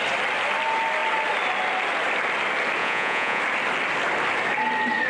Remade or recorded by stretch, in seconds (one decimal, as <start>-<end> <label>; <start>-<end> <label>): 0.0-2.8 recorded; 2.8-3.4 remade; 3.4-5.1 recorded